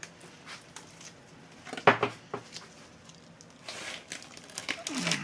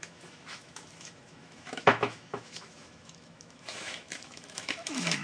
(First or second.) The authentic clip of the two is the first